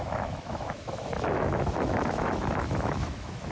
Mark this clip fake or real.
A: fake